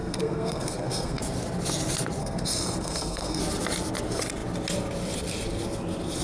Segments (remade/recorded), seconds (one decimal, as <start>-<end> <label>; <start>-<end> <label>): 0.0-1.2 remade; 1.2-2.2 recorded; 2.2-3.4 remade; 3.4-6.2 recorded